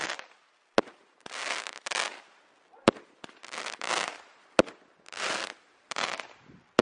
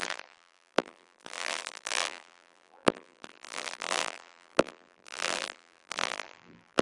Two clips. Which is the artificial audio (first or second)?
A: second